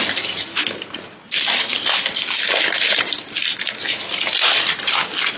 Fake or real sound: real